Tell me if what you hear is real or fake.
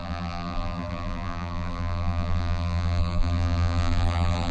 fake